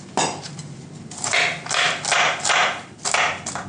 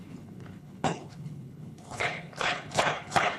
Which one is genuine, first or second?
first